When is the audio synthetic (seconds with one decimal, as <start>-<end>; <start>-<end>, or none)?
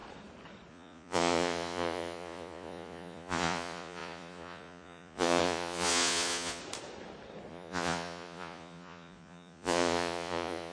0.7-6.6; 7.5-10.7